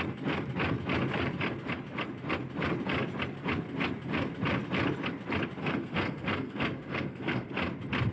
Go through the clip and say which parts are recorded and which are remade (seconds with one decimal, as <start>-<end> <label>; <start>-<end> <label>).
0.0-5.6 recorded; 5.6-7.5 remade; 7.5-8.1 recorded

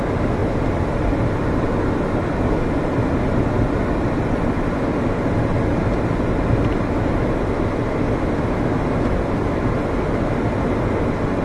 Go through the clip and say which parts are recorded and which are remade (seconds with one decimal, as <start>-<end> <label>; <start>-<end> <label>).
0.0-11.4 recorded

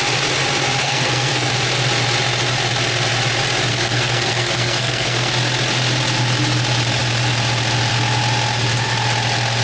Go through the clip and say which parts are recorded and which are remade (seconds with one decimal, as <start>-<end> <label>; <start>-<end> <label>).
0.0-0.8 recorded; 0.8-1.5 remade; 1.5-3.7 recorded; 3.7-5.3 remade; 5.3-9.6 recorded

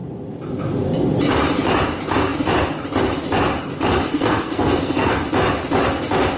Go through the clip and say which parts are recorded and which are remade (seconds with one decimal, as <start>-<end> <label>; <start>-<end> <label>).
0.0-4.1 recorded; 4.1-5.2 remade; 5.2-6.4 recorded